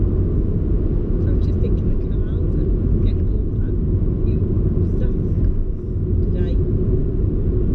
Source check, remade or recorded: recorded